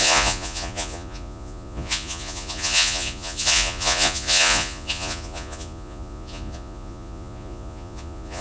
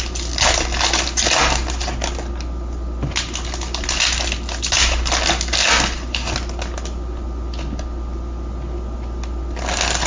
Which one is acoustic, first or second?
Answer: second